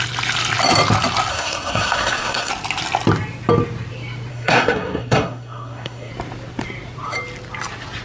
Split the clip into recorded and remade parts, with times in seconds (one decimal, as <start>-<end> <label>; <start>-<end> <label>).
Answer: 0.0-1.3 recorded; 1.3-2.5 remade; 2.5-4.3 recorded; 4.3-6.1 remade; 6.1-8.0 recorded

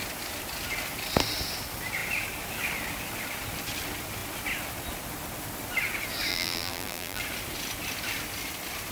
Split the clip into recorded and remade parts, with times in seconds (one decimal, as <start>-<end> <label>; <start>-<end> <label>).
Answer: 0.0-6.3 recorded; 6.3-7.2 remade; 7.2-8.9 recorded

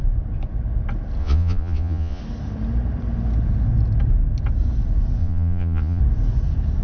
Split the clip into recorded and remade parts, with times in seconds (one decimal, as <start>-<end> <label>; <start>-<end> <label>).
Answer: 0.0-1.2 recorded; 1.2-2.2 remade; 2.2-5.2 recorded; 5.2-6.0 remade; 6.0-6.8 recorded

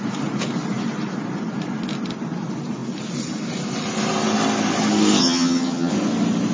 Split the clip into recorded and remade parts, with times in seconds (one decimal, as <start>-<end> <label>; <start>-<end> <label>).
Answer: 0.0-5.2 recorded; 5.2-5.9 remade; 5.9-6.5 recorded